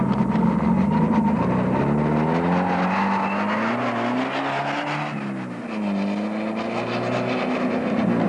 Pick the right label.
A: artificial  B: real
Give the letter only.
B